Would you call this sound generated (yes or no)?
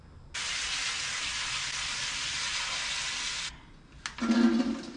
no